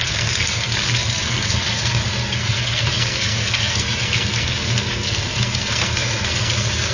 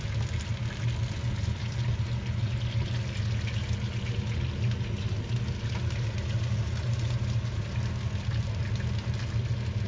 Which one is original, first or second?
second